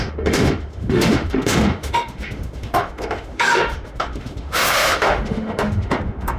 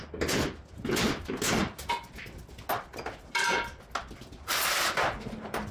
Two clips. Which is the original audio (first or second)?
second